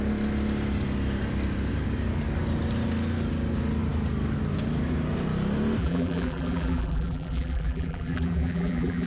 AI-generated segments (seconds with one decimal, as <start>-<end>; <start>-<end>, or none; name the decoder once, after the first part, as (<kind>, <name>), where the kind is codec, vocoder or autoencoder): 5.8-9.1 (vocoder, BigVGAN v2)